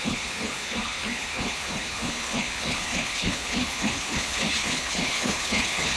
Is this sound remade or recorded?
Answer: remade